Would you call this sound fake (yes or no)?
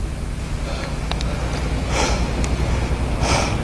no